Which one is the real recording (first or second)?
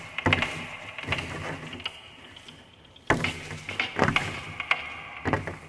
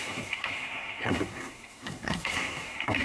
first